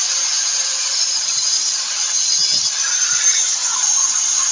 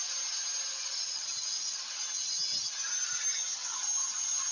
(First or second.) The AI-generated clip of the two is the first